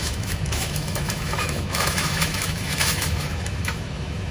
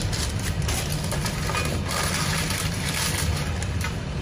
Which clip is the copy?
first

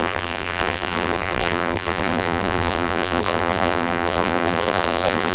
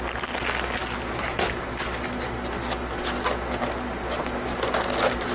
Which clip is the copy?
first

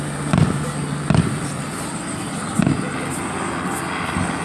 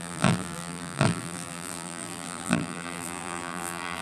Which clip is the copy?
second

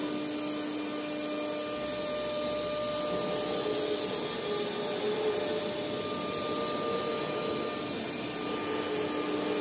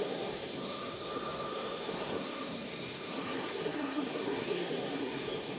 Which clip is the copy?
second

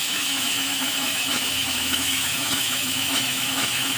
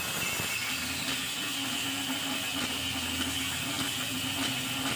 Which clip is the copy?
first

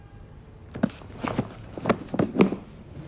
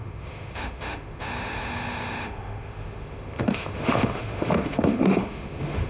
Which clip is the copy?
second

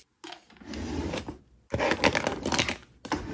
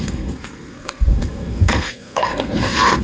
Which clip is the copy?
second